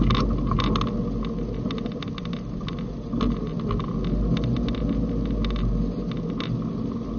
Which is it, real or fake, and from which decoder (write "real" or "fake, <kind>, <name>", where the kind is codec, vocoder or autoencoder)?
real